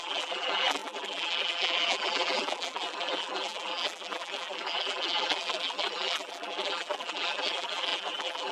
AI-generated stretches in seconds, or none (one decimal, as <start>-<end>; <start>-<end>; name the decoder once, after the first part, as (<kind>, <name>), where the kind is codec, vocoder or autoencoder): 0.0-8.5 (vocoder, BigVGAN v2)